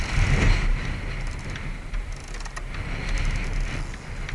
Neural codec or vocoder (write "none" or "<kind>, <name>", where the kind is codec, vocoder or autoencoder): none